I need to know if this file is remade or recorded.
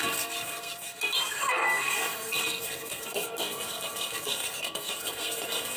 remade